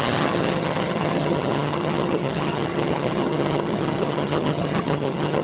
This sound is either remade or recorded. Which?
remade